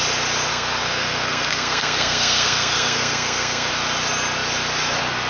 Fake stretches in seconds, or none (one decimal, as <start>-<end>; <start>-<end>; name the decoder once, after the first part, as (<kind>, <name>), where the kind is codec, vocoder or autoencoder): 0.5-3.7 (codec, SNAC)